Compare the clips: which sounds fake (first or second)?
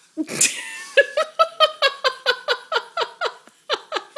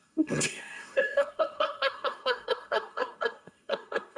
second